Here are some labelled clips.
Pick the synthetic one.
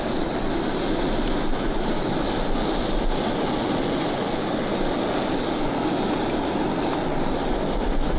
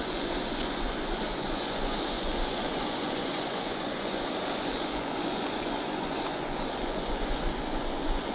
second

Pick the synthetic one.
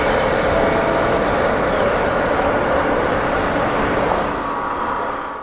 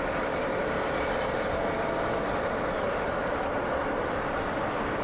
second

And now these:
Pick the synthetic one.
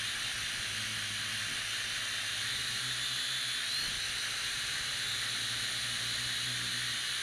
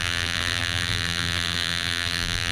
second